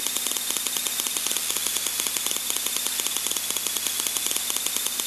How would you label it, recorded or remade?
recorded